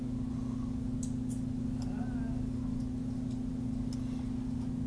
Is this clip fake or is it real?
real